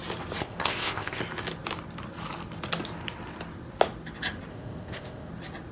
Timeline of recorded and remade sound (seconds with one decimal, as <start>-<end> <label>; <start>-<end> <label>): 0.0-0.4 recorded; 0.4-1.2 remade; 1.2-4.5 recorded; 4.5-5.3 remade; 5.3-5.7 recorded